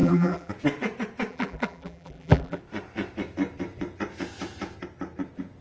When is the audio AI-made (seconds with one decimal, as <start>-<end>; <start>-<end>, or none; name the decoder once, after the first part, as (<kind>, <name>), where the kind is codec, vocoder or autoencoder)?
0.0-0.5 (vocoder, BigVGAN v2); 1.3-2.6

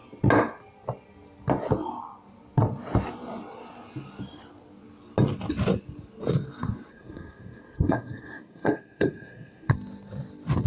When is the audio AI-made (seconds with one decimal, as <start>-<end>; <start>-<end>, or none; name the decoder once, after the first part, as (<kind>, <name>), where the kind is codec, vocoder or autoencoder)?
6.9-9.7 (codec, SNAC)

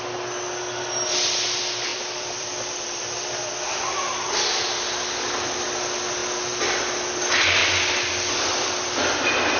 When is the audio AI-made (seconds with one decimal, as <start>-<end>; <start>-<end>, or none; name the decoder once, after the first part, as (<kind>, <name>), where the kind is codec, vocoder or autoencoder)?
1.9-3.0 (vocoder, BigVGAN v2); 7.6-8.1

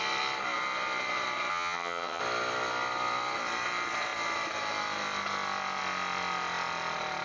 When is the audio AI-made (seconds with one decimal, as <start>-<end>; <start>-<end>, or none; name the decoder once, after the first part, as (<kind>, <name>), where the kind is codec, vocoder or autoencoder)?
1.5-2.2 (vocoder, HiFi-GAN)

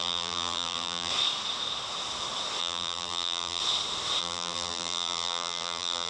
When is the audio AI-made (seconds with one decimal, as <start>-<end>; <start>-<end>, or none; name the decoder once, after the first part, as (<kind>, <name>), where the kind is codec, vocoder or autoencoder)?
0.0-1.1 (vocoder, BigVGAN v2); 2.6-3.6; 4.2-6.1

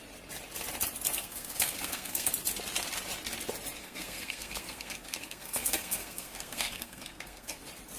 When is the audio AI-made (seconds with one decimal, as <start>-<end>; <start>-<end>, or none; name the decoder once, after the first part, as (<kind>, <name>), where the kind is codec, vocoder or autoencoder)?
1.2-2.3 (codec, SNAC); 3.8-7.6